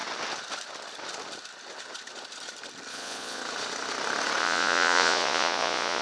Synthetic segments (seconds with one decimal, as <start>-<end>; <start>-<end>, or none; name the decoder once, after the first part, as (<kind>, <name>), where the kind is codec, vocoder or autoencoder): 2.9-3.4 (vocoder, Vocos); 4.4-6.0